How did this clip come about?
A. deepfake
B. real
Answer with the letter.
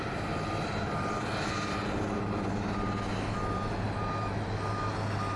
B